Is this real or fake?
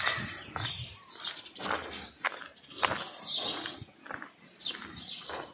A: real